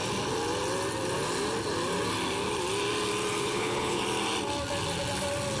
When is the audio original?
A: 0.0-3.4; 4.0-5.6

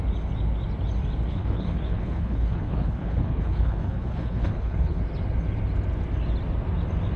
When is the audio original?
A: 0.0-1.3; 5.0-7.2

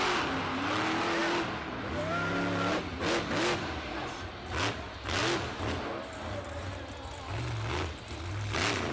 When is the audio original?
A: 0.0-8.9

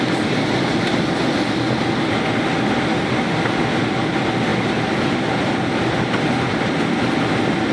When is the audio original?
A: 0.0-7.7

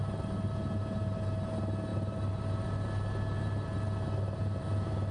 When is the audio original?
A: 0.0-5.1

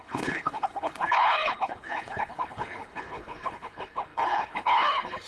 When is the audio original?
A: none